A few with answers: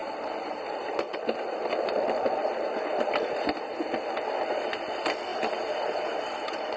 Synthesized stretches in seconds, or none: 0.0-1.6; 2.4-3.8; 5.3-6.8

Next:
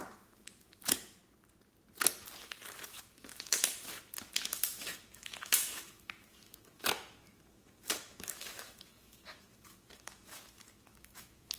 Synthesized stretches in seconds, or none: 0.0-1.2; 2.4-11.6

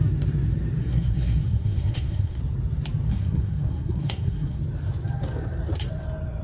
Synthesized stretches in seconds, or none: 0.8-2.4; 3.1-4.6

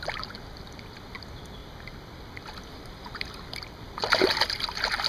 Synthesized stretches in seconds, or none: 1.6-3.9

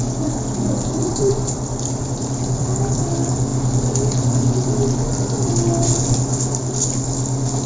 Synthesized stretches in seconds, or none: 1.1-3.1

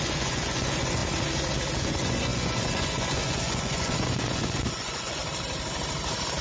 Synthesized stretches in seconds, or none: 0.0-1.0; 1.8-5.2

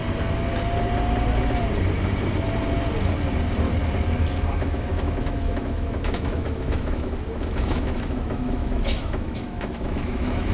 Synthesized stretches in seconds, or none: 4.5-10.5

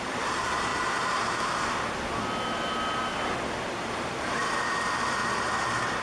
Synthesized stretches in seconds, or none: 0.0-0.7; 4.2-5.2